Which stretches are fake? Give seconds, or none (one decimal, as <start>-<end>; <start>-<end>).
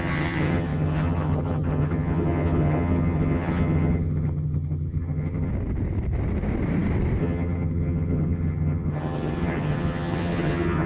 0.0-5.5; 7.2-10.9